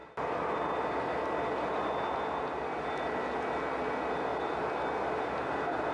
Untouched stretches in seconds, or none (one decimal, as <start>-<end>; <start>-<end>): 0.0-5.9